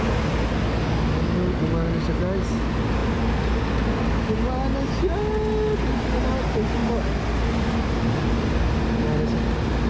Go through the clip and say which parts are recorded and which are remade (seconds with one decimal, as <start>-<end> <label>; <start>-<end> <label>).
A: 0.0-9.9 recorded